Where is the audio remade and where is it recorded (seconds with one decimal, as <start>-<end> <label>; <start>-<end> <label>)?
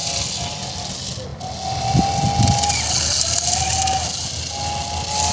0.0-5.3 recorded